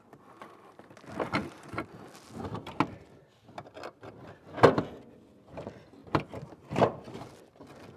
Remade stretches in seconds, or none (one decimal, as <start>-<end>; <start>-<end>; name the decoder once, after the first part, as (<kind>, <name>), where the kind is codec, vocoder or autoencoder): none